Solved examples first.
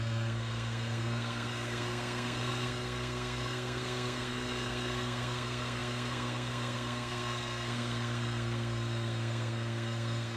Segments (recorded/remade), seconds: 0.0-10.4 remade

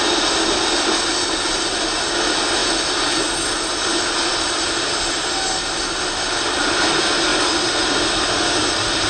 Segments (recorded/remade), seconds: 0.0-9.1 recorded

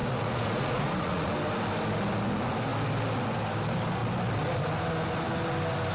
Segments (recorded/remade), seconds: 0.0-1.3 remade; 1.3-5.9 recorded